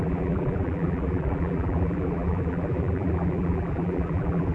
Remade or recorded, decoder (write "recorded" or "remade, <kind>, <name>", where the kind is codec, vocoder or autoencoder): remade, vocoder, BigVGAN v2